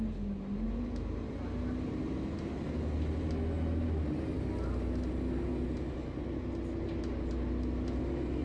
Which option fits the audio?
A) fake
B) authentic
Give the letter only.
B